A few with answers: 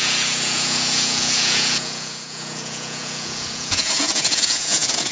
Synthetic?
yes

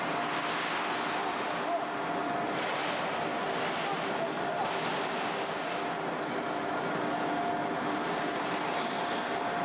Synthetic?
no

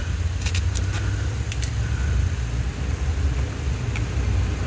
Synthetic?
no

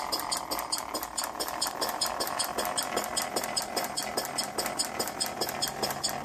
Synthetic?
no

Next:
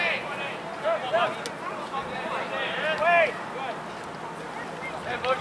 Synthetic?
no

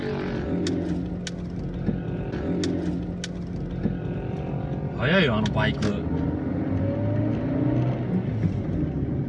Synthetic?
no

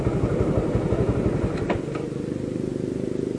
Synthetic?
no